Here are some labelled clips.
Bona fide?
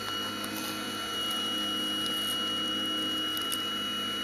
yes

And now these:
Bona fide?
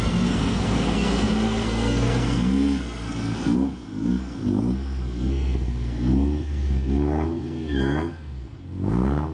no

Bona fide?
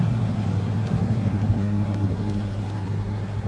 no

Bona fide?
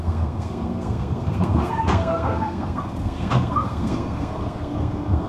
no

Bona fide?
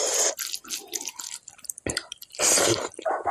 yes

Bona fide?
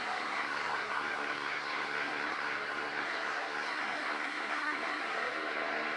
no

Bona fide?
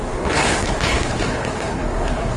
no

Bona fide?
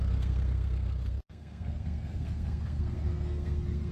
no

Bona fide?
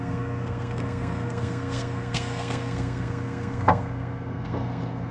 no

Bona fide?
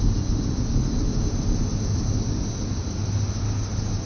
yes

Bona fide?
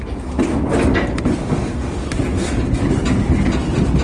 yes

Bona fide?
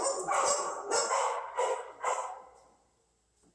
yes